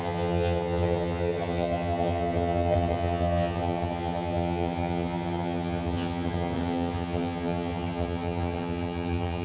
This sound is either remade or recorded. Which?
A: remade